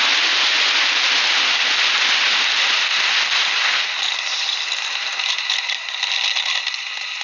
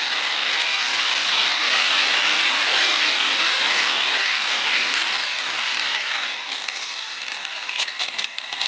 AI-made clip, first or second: second